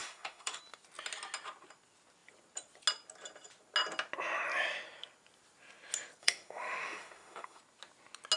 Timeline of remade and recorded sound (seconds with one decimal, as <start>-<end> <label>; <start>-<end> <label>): 0.0-0.6 remade; 0.6-6.2 recorded; 6.2-7.6 remade; 7.6-8.4 recorded

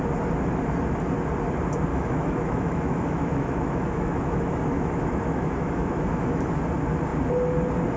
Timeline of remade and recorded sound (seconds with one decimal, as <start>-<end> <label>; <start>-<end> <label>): 0.0-1.9 recorded; 1.9-6.5 remade; 6.5-8.0 recorded